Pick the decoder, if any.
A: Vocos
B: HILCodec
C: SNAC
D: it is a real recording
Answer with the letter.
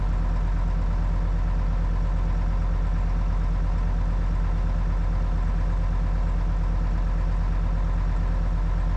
D